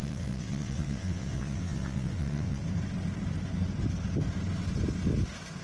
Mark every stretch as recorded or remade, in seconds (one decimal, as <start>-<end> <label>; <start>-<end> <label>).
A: 0.0-2.6 remade; 2.6-5.6 recorded